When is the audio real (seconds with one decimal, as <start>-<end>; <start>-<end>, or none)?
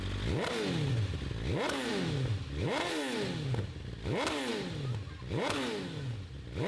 0.0-6.7